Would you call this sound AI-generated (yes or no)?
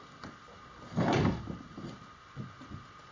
no